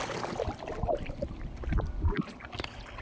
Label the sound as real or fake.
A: real